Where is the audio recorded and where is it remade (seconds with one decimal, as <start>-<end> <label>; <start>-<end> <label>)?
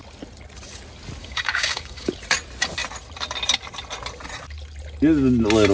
0.0-1.2 recorded; 1.2-2.1 remade; 2.1-5.7 recorded